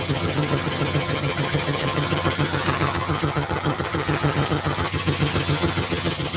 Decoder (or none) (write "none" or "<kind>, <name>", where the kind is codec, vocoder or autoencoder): vocoder, HiFi-GAN